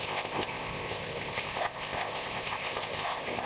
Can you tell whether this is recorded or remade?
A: remade